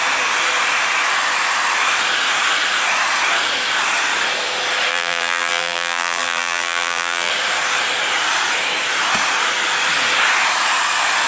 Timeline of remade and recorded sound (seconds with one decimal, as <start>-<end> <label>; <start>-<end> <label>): 0.0-4.9 recorded; 4.9-7.3 remade; 7.3-11.3 recorded